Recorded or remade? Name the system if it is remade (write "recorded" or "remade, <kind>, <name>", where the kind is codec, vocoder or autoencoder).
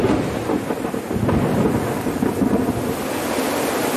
recorded